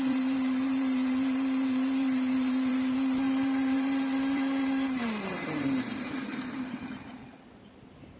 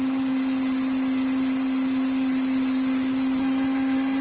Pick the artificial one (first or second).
first